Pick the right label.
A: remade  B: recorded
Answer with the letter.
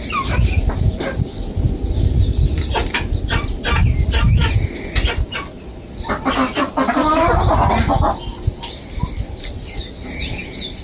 B